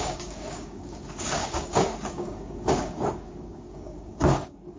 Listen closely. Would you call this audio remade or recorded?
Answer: remade